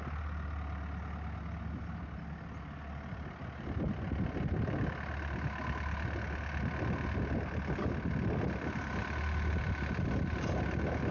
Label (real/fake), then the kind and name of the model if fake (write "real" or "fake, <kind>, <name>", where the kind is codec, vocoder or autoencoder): real